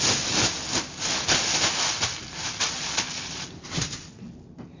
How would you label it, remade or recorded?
recorded